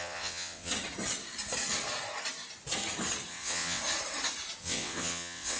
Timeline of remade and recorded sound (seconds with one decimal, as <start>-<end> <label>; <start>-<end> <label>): 0.0-0.7 remade; 0.7-3.3 recorded; 3.3-3.8 remade; 3.8-4.6 recorded; 4.6-5.6 remade

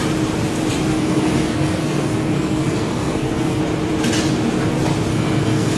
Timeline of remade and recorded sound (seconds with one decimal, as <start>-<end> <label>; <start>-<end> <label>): 0.0-0.9 recorded; 0.9-3.6 remade; 3.6-5.1 recorded; 5.1-5.8 remade

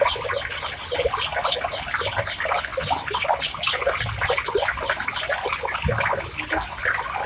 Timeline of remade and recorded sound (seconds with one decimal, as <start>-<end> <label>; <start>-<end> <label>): 0.0-7.3 recorded

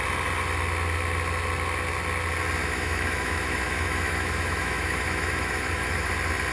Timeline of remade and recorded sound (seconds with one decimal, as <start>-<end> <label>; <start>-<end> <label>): 0.0-2.6 recorded; 2.6-6.1 remade; 6.1-6.5 recorded

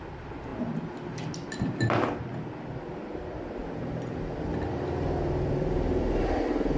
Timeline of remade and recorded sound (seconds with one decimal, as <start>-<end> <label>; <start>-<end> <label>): 0.0-6.8 recorded

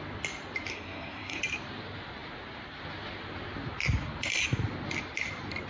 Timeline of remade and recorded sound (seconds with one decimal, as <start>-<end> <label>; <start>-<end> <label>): 0.0-0.7 recorded; 0.7-1.4 remade; 1.4-5.7 recorded

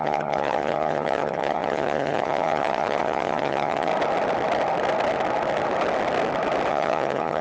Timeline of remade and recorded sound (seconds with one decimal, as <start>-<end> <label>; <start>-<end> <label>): 0.0-3.9 remade; 3.9-6.7 recorded; 6.7-7.4 remade